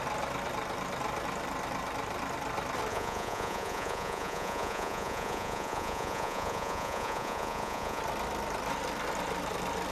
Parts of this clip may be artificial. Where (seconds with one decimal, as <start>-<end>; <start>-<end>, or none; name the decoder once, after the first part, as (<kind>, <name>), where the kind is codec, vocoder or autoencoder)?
2.9-8.0 (vocoder, Vocos)